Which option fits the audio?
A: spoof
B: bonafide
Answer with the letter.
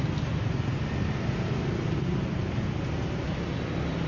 B